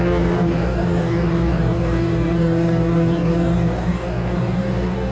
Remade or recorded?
remade